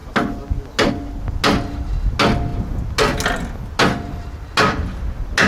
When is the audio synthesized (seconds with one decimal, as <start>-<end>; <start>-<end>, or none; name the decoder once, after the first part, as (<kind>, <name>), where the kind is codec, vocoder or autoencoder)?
none